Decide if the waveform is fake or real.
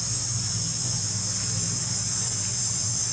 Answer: real